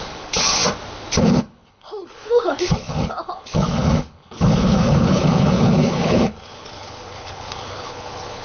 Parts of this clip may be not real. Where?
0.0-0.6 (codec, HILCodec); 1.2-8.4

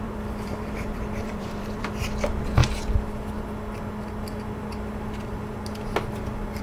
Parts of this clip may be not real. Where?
0.0-2.6 (vocoder, BigVGAN v2)

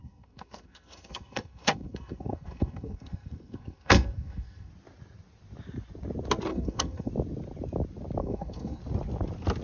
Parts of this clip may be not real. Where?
0.0-4.7 (codec, SNAC); 6.5-7.1; 8.2-8.8

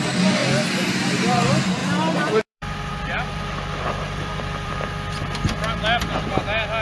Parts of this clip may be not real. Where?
1.8-4.7 (vocoder, BigVGAN v2)

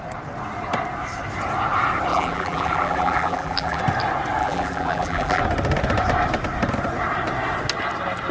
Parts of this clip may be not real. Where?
2.1-3.8 (vocoder, BigVGAN v2); 4.4-5.4

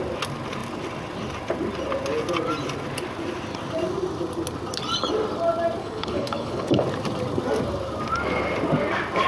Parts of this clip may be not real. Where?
5.8-6.8 (codec, HILCodec)